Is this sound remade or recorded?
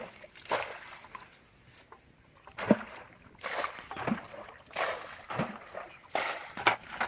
recorded